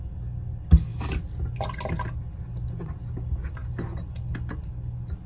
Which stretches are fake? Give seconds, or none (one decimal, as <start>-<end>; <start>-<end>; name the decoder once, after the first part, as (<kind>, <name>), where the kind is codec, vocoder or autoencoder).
none